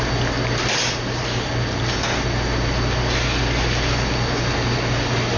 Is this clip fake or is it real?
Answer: real